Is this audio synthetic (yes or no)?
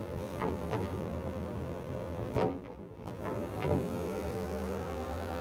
yes